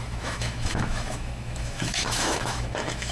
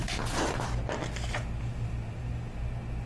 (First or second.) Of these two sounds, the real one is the second